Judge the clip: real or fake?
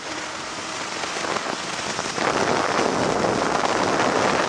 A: real